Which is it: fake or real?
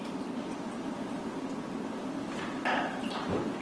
real